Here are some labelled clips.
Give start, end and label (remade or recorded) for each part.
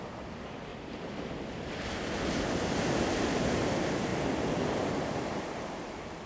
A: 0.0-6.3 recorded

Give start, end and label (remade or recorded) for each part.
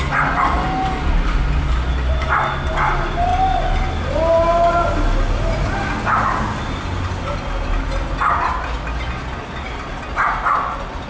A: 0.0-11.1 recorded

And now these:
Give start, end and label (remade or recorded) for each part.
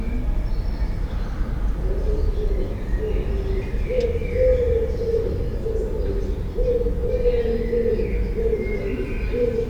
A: 0.0-9.7 recorded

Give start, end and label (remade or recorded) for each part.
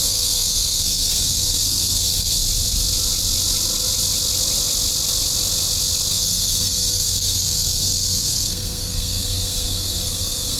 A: 0.0-2.4 remade; 2.4-6.1 recorded; 6.1-10.6 remade